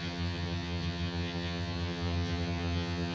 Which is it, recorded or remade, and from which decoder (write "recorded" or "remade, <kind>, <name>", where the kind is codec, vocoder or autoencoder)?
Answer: remade, vocoder, HiFi-GAN